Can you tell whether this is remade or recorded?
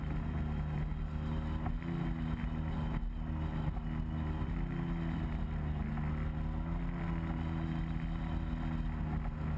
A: recorded